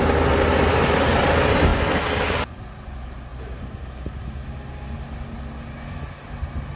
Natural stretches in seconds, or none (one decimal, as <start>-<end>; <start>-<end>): 0.0-6.8